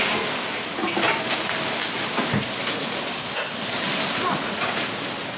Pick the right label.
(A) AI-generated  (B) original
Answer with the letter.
B